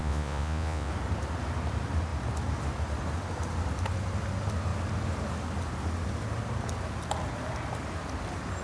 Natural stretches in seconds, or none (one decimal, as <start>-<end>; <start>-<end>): 0.9-8.6